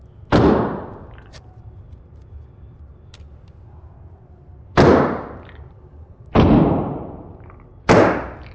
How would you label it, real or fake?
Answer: real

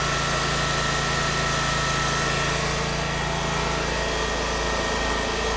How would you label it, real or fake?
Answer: real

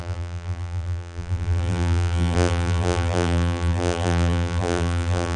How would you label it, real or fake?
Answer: fake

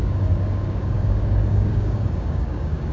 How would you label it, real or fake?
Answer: fake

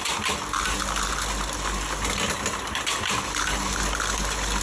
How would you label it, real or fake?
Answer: real